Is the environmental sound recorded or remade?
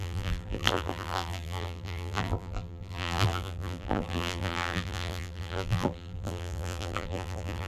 remade